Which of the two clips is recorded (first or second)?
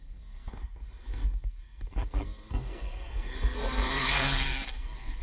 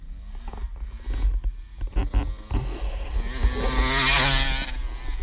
second